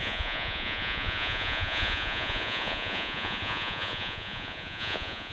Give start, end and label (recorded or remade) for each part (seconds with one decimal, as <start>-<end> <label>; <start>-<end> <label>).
0.0-5.3 remade